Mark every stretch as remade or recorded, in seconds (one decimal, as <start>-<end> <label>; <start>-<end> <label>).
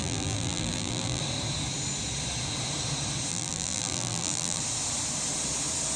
0.0-1.2 remade; 1.2-3.3 recorded; 3.3-4.6 remade; 4.6-6.0 recorded